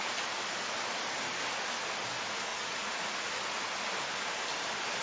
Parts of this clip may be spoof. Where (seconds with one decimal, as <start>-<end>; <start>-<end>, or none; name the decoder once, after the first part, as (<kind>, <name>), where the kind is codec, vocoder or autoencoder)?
2.5-3.3 (vocoder, Vocos)